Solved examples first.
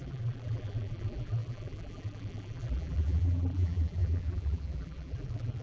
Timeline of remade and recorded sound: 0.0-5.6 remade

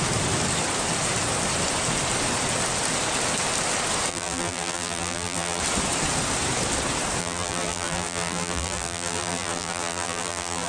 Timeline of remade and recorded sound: 0.0-4.1 recorded; 4.1-5.6 remade; 5.6-7.2 recorded; 7.2-10.7 remade

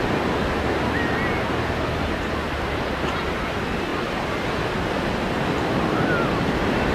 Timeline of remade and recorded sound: 0.0-3.9 recorded; 3.9-5.6 remade; 5.6-6.9 recorded

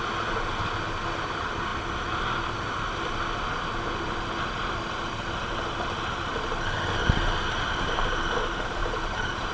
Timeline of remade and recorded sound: 0.0-8.8 recorded; 8.8-9.5 remade

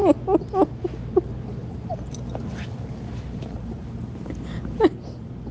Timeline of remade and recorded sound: 0.0-1.6 recorded; 1.6-4.3 remade; 4.3-5.5 recorded

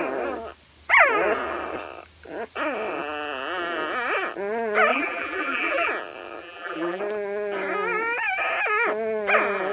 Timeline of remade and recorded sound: 0.0-4.9 recorded; 4.9-5.9 remade; 5.9-6.4 recorded; 6.4-7.0 remade; 7.0-9.7 recorded

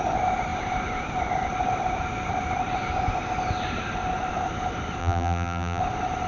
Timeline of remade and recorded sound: 0.0-5.0 recorded; 5.0-5.8 remade; 5.8-6.3 recorded

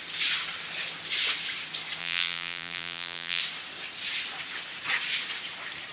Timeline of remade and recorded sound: 0.0-2.0 recorded; 2.0-3.4 remade; 3.4-5.9 recorded